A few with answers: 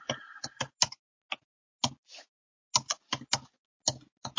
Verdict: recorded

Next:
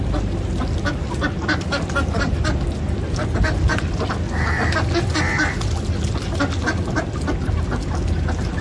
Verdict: recorded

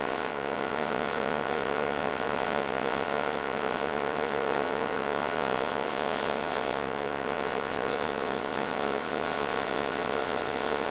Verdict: remade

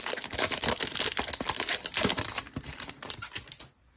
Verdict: recorded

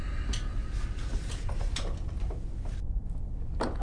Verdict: recorded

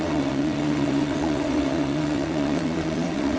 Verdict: remade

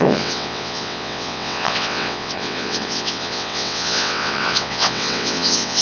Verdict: remade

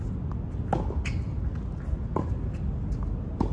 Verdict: recorded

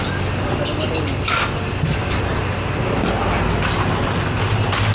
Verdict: recorded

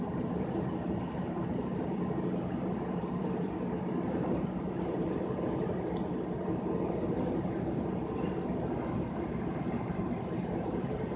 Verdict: recorded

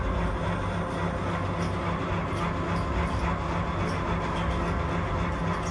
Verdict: recorded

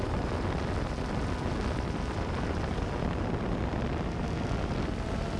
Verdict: recorded